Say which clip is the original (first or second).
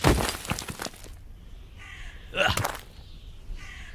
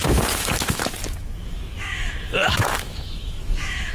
first